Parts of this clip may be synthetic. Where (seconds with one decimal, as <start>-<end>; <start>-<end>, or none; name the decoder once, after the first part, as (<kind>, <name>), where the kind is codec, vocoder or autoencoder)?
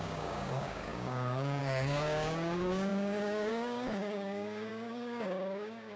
0.0-6.0 (codec, DAC)